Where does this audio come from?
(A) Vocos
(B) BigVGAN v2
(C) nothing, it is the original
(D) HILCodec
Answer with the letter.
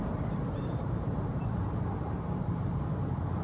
B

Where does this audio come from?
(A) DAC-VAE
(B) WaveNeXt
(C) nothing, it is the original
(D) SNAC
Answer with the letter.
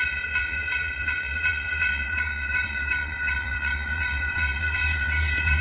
B